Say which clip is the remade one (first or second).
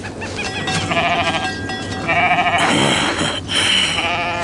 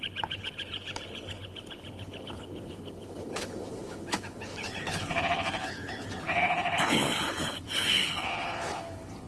second